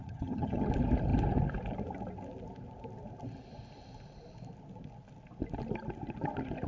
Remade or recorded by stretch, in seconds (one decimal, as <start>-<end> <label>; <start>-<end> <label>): 0.0-0.7 remade; 0.7-6.7 recorded